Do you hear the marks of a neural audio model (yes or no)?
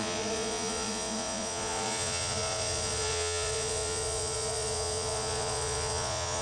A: yes